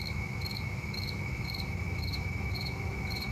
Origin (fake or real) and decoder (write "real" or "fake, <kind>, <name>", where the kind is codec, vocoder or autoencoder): fake, autoencoder, DAC-VAE